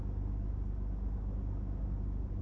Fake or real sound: real